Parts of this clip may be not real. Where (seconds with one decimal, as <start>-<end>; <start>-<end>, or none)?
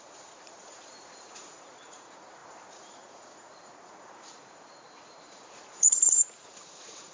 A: 0.0-7.1